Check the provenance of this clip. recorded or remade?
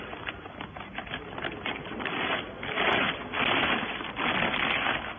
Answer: recorded